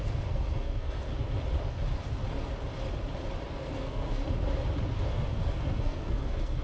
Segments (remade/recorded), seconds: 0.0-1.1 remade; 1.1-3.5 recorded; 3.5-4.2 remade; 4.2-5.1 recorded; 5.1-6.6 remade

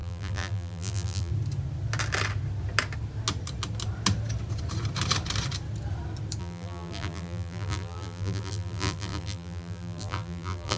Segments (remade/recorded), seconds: 0.0-1.3 remade; 1.3-6.4 recorded; 6.4-10.8 remade

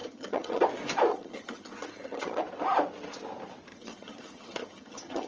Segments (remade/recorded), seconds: 0.0-0.6 remade; 0.6-1.1 recorded; 1.1-2.4 remade; 2.4-3.7 recorded; 3.7-5.3 remade

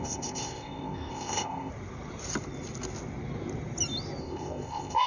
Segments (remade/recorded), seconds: 0.0-1.7 remade; 1.7-4.2 recorded; 4.2-5.1 remade

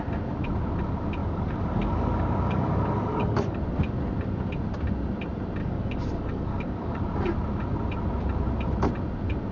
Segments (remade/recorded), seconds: 0.0-1.2 recorded; 1.2-3.6 remade; 3.6-5.6 recorded; 5.6-7.0 remade; 7.0-9.5 recorded